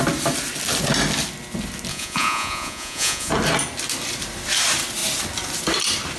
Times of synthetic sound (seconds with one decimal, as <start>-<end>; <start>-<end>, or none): 1.9-3.3